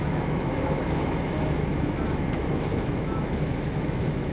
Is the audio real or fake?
fake